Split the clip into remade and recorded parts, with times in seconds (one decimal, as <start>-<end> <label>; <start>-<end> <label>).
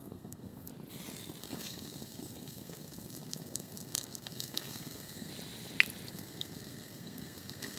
0.0-0.7 remade; 0.7-1.4 recorded; 1.4-5.3 remade; 5.3-6.1 recorded; 6.1-7.8 remade